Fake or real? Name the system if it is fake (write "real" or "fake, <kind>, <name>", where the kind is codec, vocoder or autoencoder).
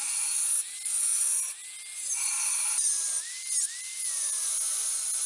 real